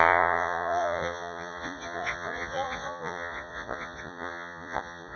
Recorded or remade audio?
remade